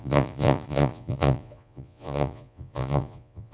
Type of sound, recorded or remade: remade